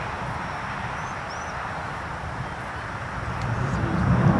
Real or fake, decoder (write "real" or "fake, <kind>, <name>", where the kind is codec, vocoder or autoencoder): real